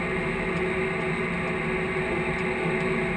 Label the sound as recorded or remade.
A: recorded